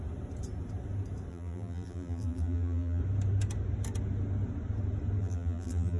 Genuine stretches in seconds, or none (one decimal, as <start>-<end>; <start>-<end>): 0.0-1.3; 3.0-5.2